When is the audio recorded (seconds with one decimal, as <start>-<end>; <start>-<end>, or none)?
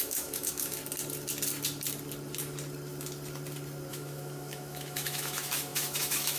0.8-3.9